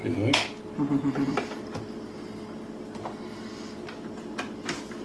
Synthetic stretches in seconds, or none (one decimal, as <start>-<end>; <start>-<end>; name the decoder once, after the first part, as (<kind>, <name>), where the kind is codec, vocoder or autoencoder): none